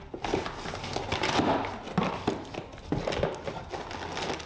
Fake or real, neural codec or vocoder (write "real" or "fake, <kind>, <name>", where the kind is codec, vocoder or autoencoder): real